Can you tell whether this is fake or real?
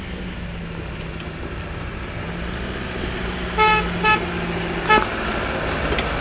real